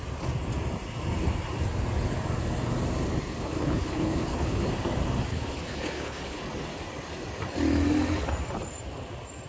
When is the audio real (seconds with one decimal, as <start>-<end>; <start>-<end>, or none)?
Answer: 0.0-3.4; 4.7-5.3; 6.4-9.5